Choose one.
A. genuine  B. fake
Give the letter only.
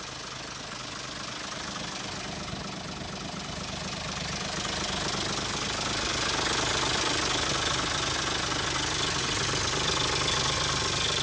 A